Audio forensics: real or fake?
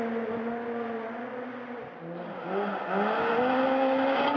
real